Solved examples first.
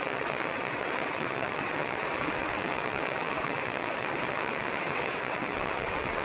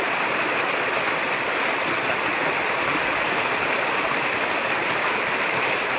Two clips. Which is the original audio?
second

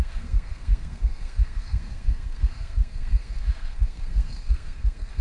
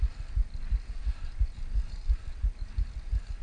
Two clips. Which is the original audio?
second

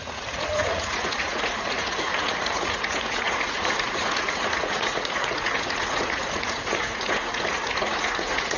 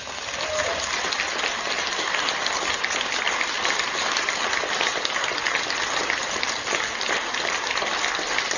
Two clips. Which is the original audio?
second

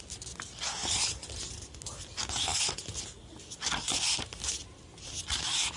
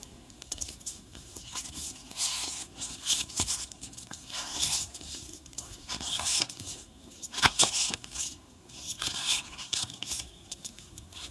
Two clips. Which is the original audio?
first